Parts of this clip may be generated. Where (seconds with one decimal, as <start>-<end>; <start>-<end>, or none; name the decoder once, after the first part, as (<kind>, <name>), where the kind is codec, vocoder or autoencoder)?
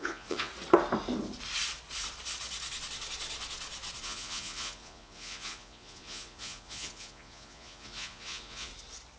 0.0-0.5 (vocoder, Vocos); 4.0-8.7